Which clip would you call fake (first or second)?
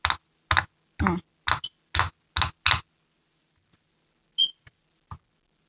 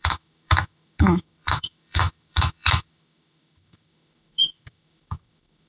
second